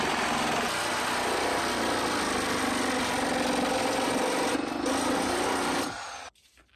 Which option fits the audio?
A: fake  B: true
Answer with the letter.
B